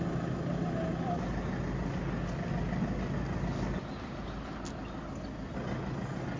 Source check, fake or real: real